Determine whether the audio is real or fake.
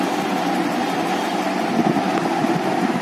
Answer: real